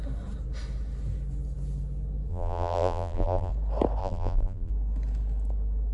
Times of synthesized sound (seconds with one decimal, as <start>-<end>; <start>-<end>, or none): 2.3-3.5; 4.0-4.7